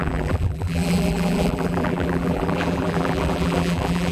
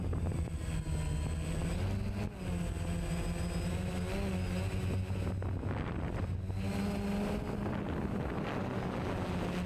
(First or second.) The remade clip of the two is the first